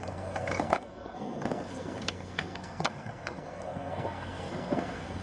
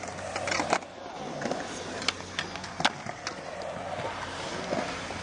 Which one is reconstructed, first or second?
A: first